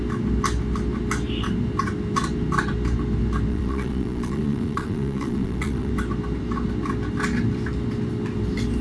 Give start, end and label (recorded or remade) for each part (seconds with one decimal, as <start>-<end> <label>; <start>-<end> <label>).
0.0-3.5 recorded; 3.5-5.9 remade; 5.9-8.8 recorded